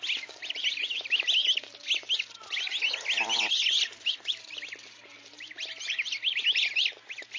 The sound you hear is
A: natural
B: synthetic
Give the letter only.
A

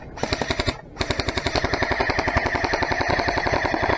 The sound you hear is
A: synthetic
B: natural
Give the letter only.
B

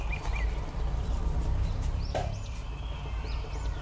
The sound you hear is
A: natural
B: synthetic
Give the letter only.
A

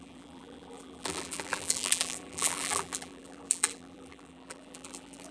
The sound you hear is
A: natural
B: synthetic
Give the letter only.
B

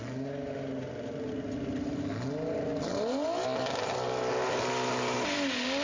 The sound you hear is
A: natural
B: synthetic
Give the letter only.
A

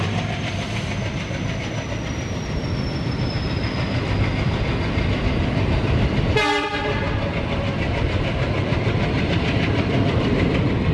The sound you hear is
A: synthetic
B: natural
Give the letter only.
A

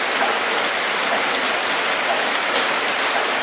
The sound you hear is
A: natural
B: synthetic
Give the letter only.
A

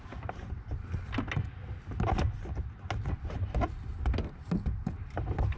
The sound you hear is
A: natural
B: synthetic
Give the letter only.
A